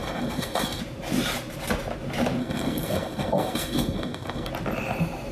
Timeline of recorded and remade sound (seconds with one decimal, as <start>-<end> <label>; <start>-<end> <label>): 0.0-0.8 remade; 0.8-2.4 recorded; 2.4-4.5 remade; 4.5-5.3 recorded